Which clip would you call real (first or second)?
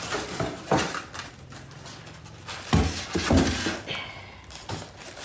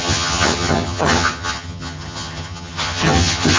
first